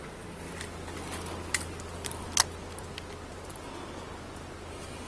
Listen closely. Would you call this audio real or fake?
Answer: real